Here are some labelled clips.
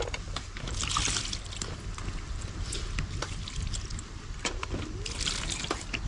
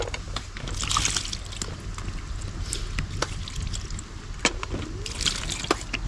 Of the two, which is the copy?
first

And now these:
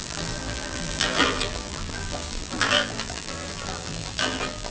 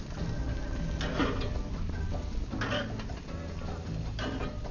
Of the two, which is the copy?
first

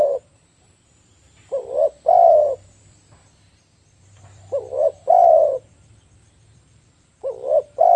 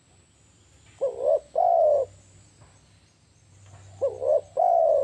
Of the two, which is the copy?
first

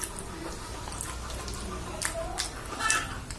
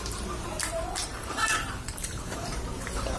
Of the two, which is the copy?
second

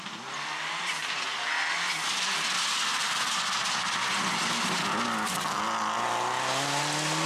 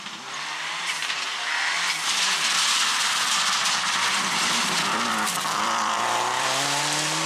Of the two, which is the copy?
second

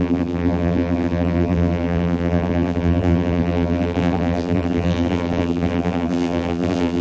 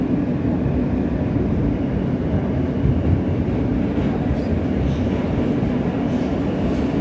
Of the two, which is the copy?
first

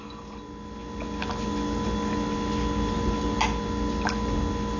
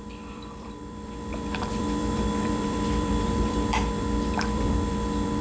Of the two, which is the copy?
second